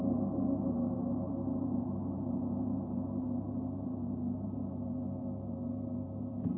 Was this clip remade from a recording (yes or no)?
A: yes